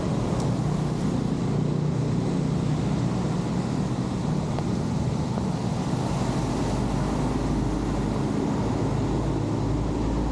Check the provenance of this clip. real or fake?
real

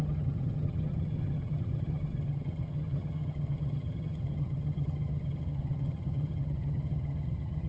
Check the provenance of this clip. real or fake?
fake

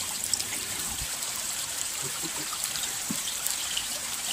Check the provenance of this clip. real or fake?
fake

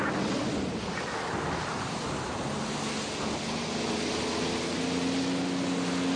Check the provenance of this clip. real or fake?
real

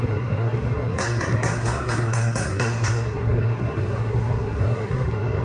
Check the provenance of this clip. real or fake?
fake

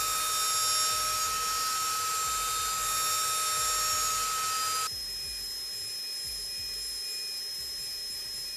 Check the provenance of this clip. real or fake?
real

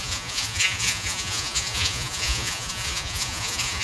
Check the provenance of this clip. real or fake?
fake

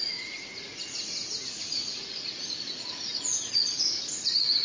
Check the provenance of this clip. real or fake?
fake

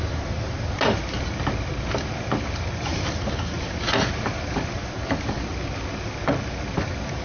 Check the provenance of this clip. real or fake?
real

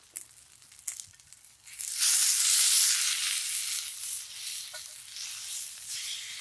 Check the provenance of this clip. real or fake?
real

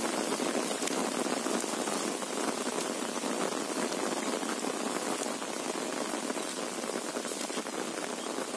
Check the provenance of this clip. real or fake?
real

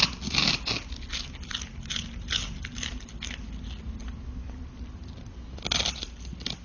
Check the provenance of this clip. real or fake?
real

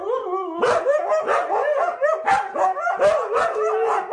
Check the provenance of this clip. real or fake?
real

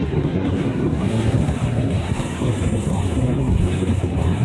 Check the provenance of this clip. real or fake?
fake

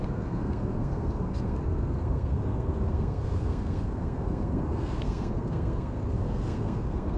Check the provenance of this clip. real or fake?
fake